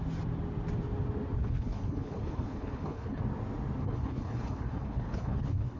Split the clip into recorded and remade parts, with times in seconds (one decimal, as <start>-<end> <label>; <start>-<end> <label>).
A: 0.0-1.4 recorded; 1.4-3.2 remade; 3.2-3.8 recorded; 3.8-5.8 remade